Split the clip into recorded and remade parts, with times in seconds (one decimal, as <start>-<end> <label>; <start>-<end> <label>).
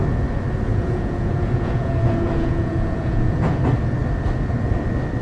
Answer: 0.0-0.7 recorded; 0.7-3.6 remade; 3.6-5.2 recorded